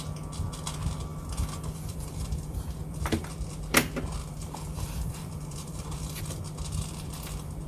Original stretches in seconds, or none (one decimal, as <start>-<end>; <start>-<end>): 0.0-1.1; 3.3-4.2; 6.2-7.7